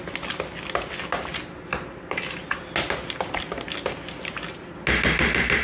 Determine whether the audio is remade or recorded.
recorded